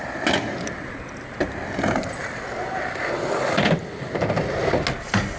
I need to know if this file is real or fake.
real